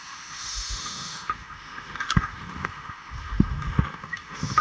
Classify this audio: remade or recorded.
remade